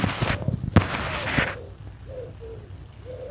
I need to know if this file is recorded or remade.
recorded